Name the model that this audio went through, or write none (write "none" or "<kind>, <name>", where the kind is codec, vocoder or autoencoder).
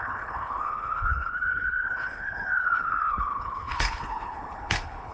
codec, HILCodec